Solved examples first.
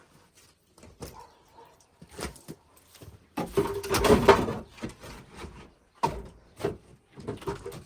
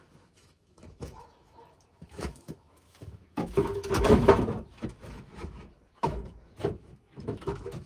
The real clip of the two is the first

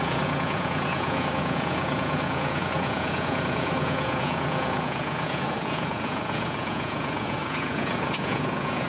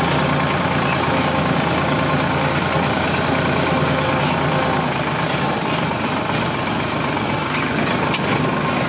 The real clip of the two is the second